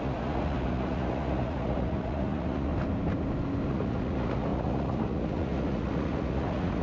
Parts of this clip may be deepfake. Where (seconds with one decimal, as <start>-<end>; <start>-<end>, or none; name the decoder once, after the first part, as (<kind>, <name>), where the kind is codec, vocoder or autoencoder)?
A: 0.0-2.7 (vocoder, Vocos); 3.7-6.8